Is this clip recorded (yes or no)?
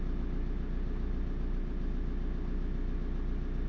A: yes